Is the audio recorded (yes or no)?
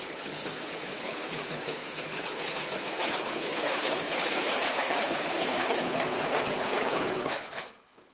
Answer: no